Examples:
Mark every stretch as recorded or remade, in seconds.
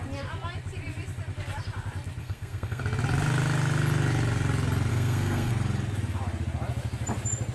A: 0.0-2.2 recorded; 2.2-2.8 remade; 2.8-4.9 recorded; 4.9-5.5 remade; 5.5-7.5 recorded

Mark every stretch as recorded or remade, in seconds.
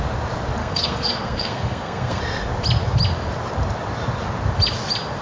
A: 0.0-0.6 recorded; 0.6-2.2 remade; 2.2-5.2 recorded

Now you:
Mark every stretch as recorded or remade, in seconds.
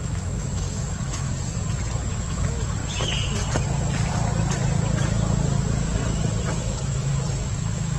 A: 0.0-1.3 remade; 1.3-2.1 recorded; 2.1-2.8 remade; 2.8-6.6 recorded; 6.6-7.1 remade; 7.1-7.6 recorded; 7.6-8.0 remade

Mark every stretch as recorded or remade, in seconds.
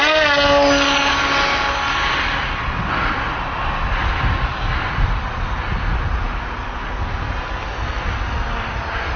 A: 0.0-9.2 recorded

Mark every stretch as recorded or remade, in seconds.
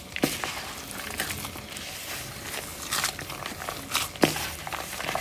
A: 0.0-5.2 recorded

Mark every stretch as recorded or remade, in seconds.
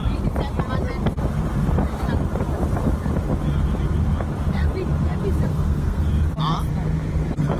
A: 0.0-5.5 recorded; 5.5-6.1 remade; 6.1-7.6 recorded